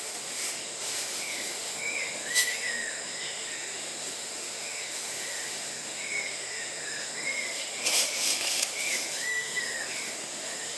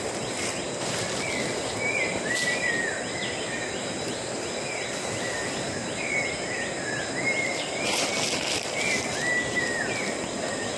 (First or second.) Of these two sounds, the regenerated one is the first